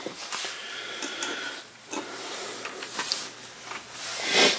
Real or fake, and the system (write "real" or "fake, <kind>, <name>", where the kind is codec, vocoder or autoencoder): real